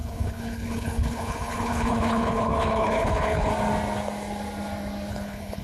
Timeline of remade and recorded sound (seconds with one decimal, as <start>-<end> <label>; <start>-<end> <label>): 0.0-3.5 remade; 3.5-5.1 recorded; 5.1-5.6 remade